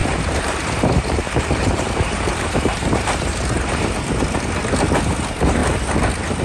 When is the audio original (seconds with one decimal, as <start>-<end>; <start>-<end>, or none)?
3.8-6.4

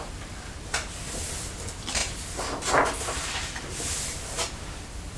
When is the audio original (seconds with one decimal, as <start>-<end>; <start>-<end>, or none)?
0.0-5.2

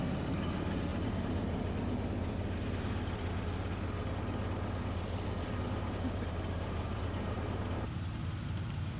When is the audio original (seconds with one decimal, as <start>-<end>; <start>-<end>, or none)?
0.9-6.1

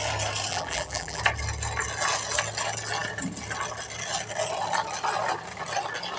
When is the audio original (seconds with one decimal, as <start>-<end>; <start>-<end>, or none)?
0.0-0.5; 1.2-6.2

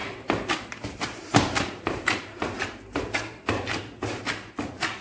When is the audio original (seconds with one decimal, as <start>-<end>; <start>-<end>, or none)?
2.6-5.0

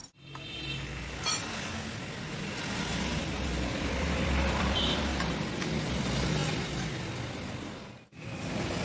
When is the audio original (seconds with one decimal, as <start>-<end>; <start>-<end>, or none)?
0.0-3.7; 5.0-8.8

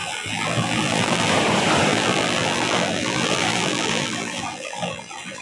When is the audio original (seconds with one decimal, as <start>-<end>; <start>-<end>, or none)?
1.3-1.9

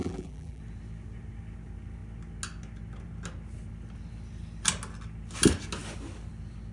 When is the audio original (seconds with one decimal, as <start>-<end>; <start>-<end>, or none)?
0.6-6.7